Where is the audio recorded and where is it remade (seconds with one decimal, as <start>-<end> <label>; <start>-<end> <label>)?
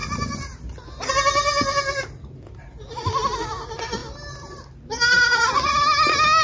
0.0-6.4 recorded